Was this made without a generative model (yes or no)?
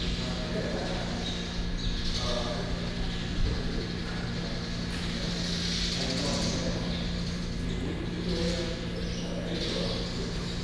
yes